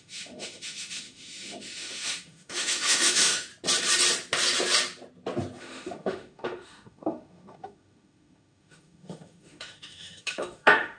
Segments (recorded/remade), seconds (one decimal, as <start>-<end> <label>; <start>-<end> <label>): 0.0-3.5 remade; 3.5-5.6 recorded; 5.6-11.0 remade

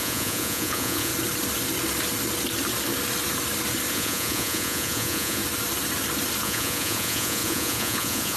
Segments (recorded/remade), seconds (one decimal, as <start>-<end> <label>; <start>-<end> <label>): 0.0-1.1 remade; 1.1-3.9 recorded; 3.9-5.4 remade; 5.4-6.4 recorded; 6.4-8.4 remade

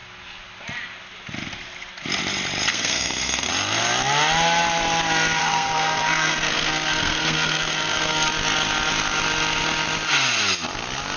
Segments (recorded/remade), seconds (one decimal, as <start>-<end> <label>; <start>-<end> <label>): 0.0-2.7 recorded; 2.7-3.5 remade; 3.5-5.4 recorded; 5.4-8.3 remade; 8.3-11.2 recorded

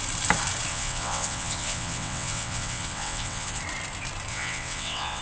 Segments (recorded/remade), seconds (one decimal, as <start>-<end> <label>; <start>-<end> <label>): 0.0-0.7 recorded; 0.7-3.6 remade; 3.6-4.3 recorded; 4.3-5.2 remade

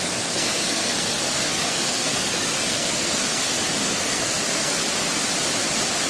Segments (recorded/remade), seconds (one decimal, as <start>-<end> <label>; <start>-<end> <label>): 0.0-4.8 remade; 4.8-6.1 recorded